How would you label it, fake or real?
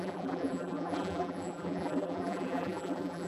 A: fake